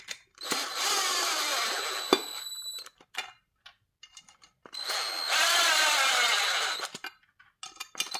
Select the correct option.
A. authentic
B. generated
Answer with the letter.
A